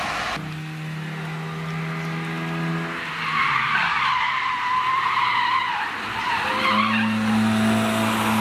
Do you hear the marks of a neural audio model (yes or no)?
no